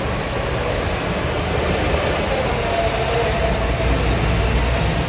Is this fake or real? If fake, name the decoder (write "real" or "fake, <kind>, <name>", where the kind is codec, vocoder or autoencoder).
real